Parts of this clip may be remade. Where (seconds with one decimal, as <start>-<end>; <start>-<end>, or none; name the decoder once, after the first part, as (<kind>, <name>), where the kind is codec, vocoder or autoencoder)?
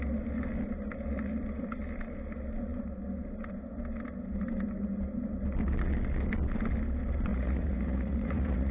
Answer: 7.3-8.7 (vocoder, Vocos)